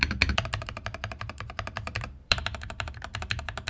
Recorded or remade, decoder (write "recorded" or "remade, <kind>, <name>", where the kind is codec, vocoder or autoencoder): remade, vocoder, BigVGAN v2